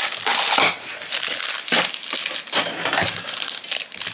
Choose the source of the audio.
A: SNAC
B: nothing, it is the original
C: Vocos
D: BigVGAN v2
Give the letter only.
B